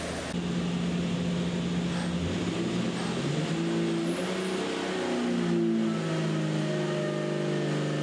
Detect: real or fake real